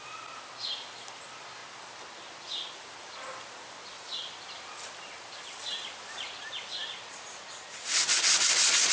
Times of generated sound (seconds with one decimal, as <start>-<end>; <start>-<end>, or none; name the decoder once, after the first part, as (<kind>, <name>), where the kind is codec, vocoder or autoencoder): none